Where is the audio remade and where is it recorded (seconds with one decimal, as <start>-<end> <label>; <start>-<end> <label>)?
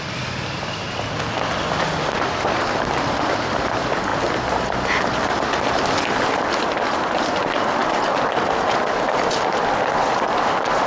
0.0-10.9 recorded